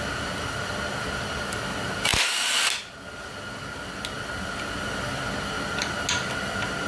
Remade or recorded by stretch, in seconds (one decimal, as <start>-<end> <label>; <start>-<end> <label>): 0.0-6.9 recorded